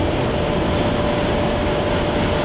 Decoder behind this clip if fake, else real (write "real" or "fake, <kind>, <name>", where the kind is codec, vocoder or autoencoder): real